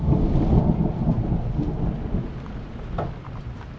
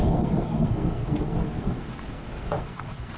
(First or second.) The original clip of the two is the first